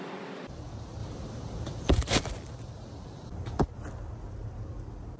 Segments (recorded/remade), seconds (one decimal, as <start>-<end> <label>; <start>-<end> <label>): 0.0-1.0 recorded; 1.0-3.6 remade; 3.6-5.2 recorded